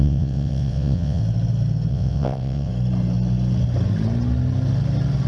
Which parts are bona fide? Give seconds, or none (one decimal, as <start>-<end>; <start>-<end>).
1.2-1.9; 2.7-5.3